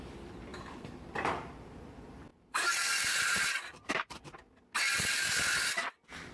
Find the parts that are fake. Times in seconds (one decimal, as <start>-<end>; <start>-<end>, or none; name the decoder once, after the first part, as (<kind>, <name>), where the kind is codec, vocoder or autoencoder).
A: 0.5-1.3 (vocoder, BigVGAN v2); 2.3-4.2